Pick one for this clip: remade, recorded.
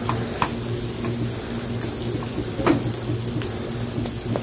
recorded